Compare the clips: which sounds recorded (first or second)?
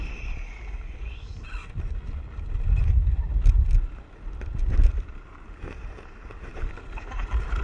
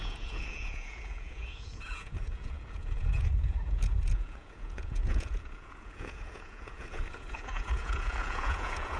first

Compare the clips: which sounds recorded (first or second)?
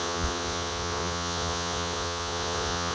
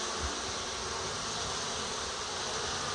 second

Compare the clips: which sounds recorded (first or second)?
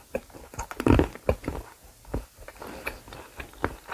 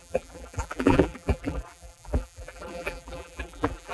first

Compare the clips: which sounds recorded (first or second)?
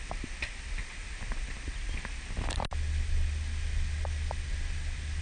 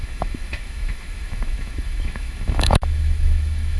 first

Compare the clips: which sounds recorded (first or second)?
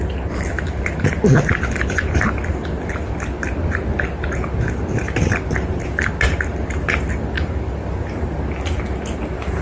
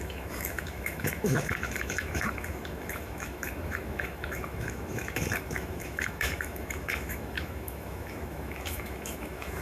first